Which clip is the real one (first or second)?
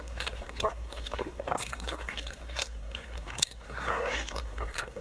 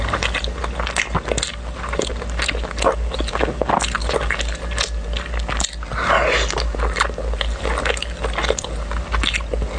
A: second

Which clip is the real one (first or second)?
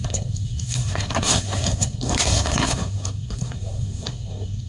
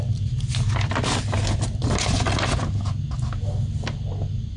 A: second